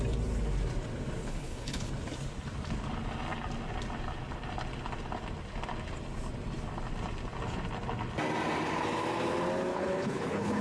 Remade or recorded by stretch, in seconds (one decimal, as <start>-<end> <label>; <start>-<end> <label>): 0.0-1.2 recorded; 1.2-1.9 remade; 1.9-9.7 recorded; 9.7-10.6 remade